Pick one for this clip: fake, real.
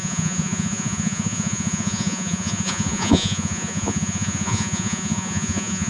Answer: fake